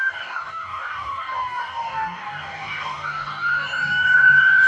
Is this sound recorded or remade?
remade